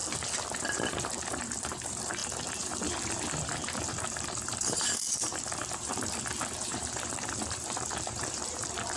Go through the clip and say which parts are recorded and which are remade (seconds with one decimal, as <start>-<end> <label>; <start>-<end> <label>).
0.0-0.6 recorded; 0.6-9.0 remade